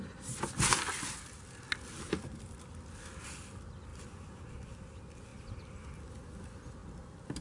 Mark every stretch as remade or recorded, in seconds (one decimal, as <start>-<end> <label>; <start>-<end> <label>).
0.0-7.4 recorded